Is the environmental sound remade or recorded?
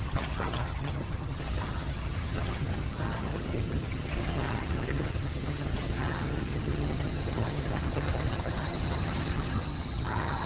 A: remade